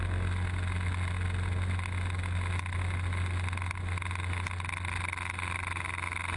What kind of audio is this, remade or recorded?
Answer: recorded